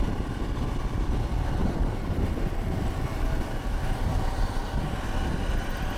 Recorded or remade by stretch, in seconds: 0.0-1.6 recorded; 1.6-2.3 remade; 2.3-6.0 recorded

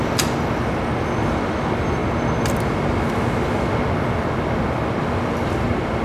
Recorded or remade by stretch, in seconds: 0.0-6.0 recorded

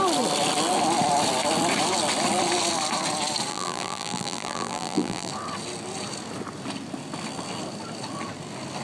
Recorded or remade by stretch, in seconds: 0.0-3.5 recorded; 3.5-5.3 remade; 5.3-8.8 recorded

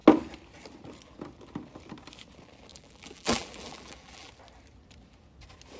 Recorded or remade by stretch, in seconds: 0.0-2.7 recorded; 2.7-4.3 remade; 4.3-5.8 recorded